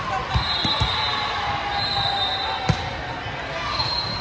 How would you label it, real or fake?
real